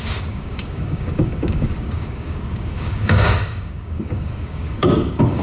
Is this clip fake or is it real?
fake